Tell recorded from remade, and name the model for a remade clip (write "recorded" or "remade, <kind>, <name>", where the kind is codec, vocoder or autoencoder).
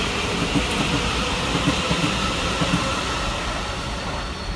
recorded